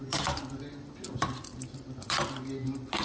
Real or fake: fake